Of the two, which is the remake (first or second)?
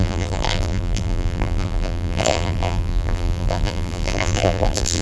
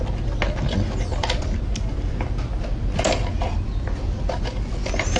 first